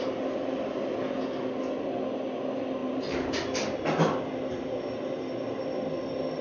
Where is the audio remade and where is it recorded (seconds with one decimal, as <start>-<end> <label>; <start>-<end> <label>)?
0.0-2.8 recorded; 2.8-4.8 remade; 4.8-6.4 recorded